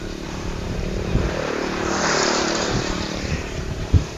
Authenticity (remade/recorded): remade